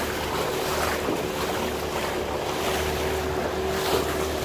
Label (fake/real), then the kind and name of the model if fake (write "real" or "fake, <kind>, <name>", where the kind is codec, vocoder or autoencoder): real